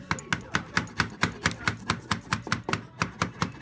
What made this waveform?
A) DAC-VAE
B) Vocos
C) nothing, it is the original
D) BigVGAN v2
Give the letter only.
C